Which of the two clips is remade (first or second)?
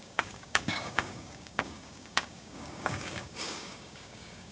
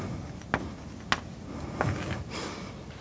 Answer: first